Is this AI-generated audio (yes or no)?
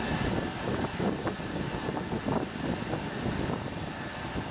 no